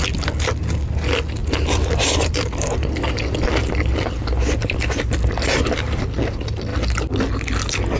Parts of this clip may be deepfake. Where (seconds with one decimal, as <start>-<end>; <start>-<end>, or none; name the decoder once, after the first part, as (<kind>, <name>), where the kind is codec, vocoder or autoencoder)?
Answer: 1.4-6.2 (vocoder, BigVGAN v2)